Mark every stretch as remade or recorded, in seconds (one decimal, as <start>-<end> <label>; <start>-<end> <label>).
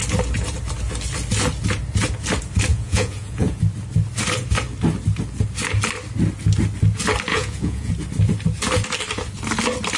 0.0-2.7 recorded; 2.7-3.6 remade; 3.6-7.3 recorded; 7.3-7.9 remade; 7.9-10.0 recorded